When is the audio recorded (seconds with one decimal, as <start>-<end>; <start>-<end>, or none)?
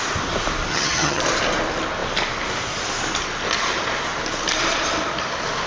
0.0-0.7; 1.2-5.7